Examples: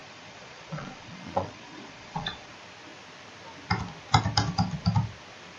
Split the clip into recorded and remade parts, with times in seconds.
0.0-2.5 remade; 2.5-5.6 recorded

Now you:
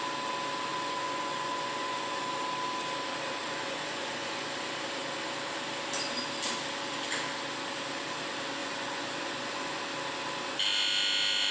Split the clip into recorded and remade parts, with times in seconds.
0.0-0.7 recorded; 0.7-2.2 remade; 2.2-3.4 recorded; 3.4-4.5 remade; 4.5-8.6 recorded; 8.6-9.8 remade; 9.8-11.5 recorded

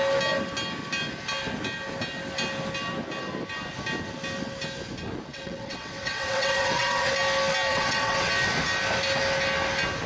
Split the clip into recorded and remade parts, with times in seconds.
0.0-5.3 recorded; 5.3-7.1 remade; 7.1-7.7 recorded; 7.7-8.3 remade; 8.3-10.1 recorded